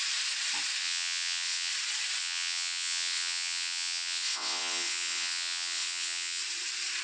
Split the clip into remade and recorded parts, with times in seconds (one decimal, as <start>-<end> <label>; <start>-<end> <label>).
0.0-0.8 recorded; 0.8-1.7 remade; 1.7-2.2 recorded; 2.2-6.4 remade; 6.4-7.0 recorded